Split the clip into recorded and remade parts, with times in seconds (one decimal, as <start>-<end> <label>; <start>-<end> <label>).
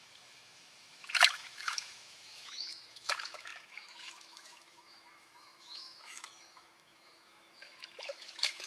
0.0-8.7 remade